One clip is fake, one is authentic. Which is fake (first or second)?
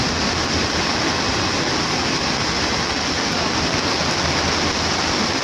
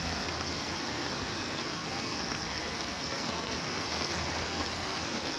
second